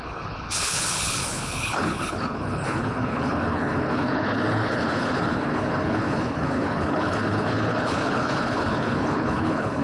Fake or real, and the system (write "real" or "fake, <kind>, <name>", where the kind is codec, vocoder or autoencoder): fake, codec, HILCodec